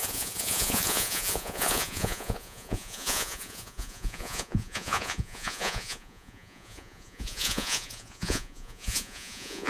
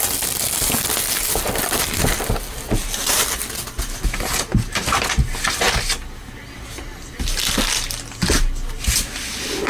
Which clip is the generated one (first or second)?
first